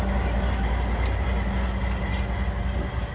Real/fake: real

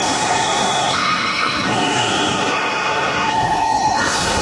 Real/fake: fake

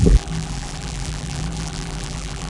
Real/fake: fake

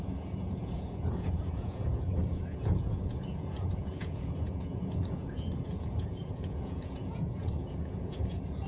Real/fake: fake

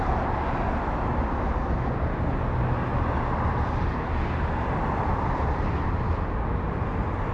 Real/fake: real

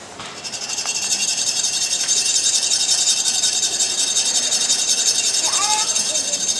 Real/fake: fake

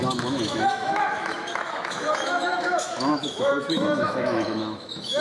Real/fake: fake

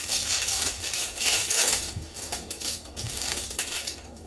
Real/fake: fake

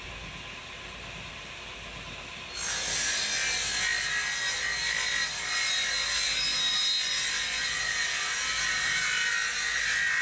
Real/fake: real